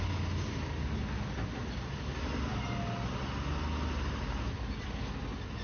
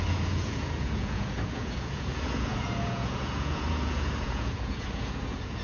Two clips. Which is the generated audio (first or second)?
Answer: second